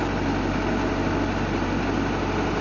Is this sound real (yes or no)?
yes